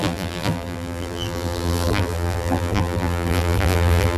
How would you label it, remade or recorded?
remade